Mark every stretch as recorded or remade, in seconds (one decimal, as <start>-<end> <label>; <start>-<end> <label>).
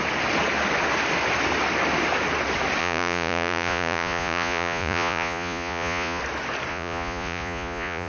0.0-2.8 recorded; 2.8-6.2 remade; 6.2-6.7 recorded; 6.7-8.1 remade